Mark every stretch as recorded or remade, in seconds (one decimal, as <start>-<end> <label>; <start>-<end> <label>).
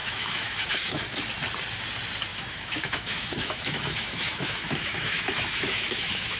0.0-1.0 remade; 1.0-2.3 recorded; 2.3-6.4 remade